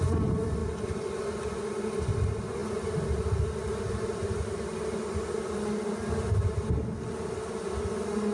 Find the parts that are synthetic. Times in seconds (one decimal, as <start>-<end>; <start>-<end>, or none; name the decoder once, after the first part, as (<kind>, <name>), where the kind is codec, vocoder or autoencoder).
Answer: 0.6-1.2 (vocoder, BigVGAN v2)